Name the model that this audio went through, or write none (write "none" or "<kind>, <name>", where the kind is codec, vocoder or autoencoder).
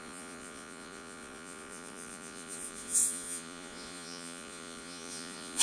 vocoder, Vocos